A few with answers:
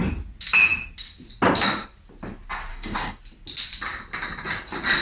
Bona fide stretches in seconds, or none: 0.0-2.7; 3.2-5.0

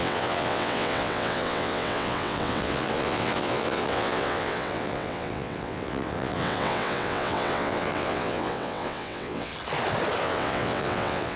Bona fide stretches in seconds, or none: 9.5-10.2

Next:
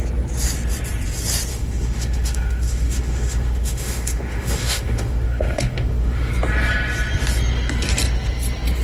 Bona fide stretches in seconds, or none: 0.0-1.5; 6.3-8.8